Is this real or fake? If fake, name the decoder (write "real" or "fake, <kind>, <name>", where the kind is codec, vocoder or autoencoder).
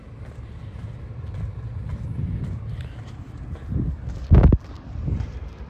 real